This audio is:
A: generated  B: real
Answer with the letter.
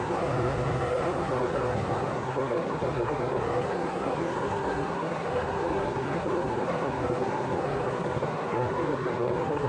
A